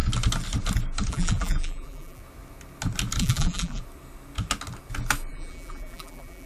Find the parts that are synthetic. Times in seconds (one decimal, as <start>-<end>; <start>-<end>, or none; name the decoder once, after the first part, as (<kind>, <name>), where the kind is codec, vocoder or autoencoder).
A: 1.1-2.2 (vocoder, BigVGAN v2); 3.2-3.8; 5.3-6.5